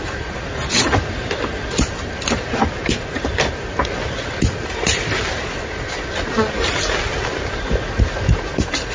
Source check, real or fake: real